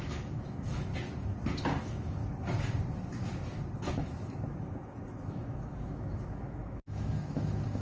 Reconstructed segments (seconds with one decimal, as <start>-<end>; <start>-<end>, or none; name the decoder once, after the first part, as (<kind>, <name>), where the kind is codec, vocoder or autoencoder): 0.0-0.9 (autoencoder, DAC-VAE); 1.6-2.2; 3.9-7.8